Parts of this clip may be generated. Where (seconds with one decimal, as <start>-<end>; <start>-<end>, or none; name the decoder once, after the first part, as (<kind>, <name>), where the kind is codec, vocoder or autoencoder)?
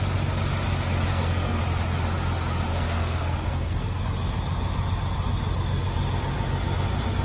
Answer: 1.1-1.6 (codec, SNAC); 2.7-4.0